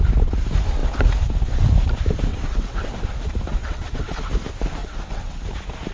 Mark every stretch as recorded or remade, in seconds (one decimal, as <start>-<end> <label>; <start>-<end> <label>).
0.0-2.3 recorded; 2.3-2.9 remade; 2.9-3.6 recorded; 3.6-4.3 remade; 4.3-4.8 recorded; 4.8-5.4 remade; 5.4-5.9 recorded